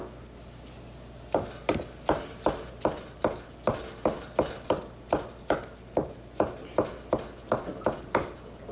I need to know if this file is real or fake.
real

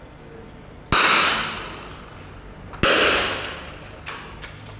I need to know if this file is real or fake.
real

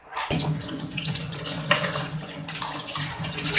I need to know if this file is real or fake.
fake